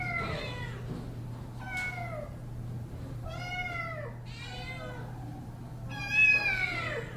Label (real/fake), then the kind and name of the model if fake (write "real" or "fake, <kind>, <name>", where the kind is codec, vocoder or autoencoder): real